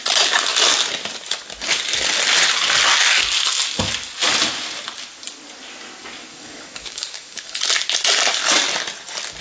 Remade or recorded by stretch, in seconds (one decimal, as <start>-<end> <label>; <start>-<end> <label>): 0.0-6.3 recorded; 6.3-7.6 remade; 7.6-9.4 recorded